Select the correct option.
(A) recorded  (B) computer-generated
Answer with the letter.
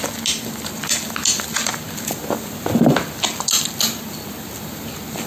A